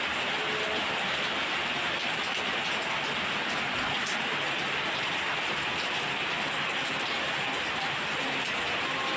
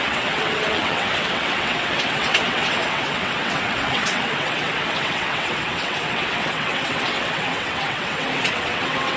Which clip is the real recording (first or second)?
first